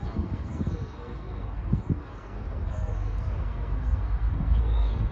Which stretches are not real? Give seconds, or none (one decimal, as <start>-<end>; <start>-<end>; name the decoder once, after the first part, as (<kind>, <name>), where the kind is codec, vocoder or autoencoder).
0.0-5.1 (codec, SNAC)